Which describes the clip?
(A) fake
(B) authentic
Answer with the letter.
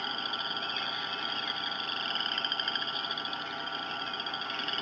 B